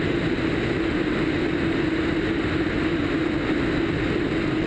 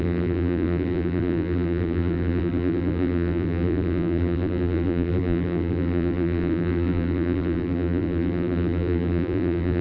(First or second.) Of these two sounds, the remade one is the second